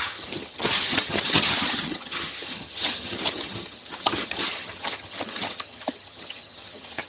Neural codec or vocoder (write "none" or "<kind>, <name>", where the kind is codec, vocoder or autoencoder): vocoder, HiFi-GAN